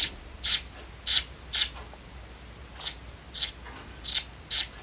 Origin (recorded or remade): recorded